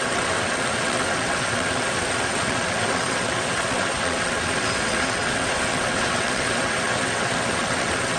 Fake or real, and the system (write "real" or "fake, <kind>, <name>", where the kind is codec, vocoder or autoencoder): fake, vocoder, WaveNeXt